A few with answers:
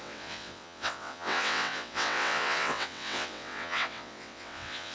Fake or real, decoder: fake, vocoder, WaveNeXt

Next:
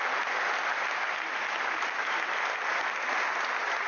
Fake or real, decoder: real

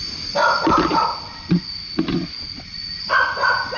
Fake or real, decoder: real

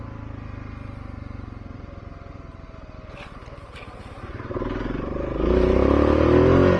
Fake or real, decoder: real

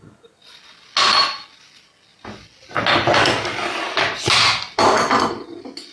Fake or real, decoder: real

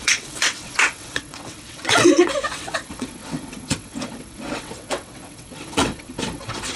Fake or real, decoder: fake, vocoder, WaveNeXt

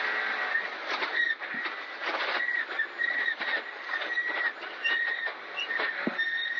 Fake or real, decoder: real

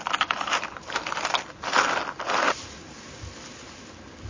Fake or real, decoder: real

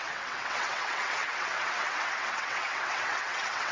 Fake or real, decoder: fake, vocoder, WaveNeXt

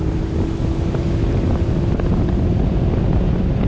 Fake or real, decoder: real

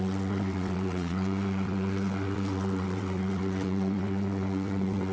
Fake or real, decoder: fake, vocoder, WaveNeXt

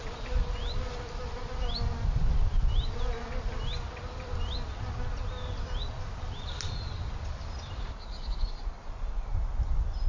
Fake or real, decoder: real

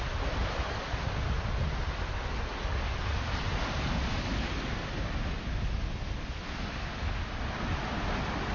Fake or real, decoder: real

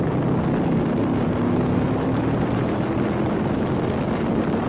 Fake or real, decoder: real